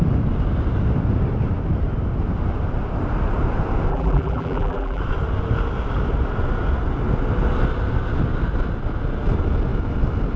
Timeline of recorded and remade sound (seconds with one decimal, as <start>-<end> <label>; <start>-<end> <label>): 0.0-3.9 recorded; 3.9-5.0 remade; 5.0-10.4 recorded